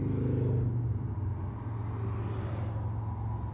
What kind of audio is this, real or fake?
real